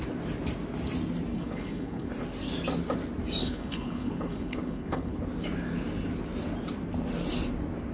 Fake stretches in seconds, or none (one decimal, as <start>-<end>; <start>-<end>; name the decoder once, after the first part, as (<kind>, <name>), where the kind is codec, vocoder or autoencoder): 1.3-2.1 (codec, HILCodec); 3.4-5.2